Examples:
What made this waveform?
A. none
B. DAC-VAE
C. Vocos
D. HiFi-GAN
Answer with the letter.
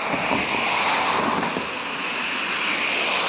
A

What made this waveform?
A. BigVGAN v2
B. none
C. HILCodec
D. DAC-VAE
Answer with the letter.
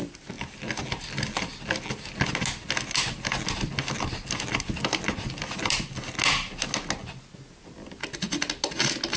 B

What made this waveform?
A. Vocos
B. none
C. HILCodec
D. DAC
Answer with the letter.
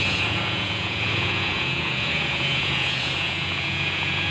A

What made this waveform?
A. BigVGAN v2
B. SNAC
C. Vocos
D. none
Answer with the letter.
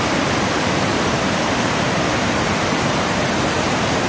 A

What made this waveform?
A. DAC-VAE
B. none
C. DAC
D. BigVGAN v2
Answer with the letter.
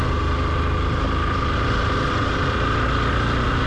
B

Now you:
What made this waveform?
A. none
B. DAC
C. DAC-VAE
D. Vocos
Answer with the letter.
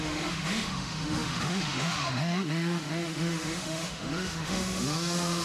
C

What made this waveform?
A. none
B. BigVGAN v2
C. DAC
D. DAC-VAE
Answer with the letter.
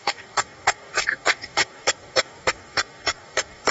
C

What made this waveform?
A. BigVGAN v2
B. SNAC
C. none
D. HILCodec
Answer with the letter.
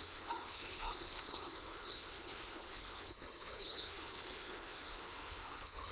D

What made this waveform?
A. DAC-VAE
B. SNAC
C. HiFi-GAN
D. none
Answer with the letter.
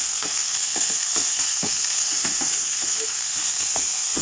B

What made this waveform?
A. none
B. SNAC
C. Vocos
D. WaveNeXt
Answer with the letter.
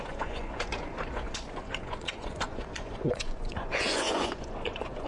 C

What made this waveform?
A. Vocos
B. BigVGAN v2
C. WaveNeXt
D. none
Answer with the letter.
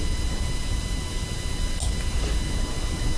D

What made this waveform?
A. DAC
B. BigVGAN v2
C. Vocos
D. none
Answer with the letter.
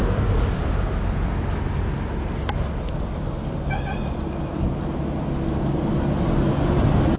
D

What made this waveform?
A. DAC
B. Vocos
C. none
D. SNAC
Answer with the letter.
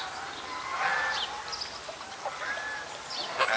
C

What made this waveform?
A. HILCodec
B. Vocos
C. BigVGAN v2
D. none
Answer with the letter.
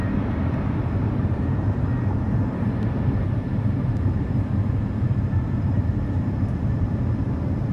C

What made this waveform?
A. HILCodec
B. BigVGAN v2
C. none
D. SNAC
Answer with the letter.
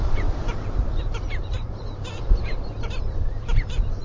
B